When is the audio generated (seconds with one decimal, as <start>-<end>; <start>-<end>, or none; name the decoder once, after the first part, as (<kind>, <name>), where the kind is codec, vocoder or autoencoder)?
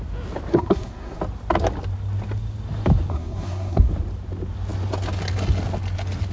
0.5-1.2 (codec, SNAC); 3.1-3.9